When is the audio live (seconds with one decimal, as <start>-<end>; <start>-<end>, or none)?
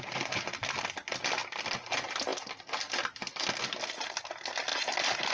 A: 0.0-1.4; 1.9-2.3; 4.2-4.7